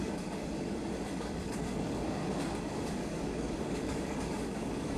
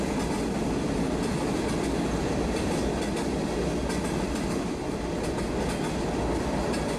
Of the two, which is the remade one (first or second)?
first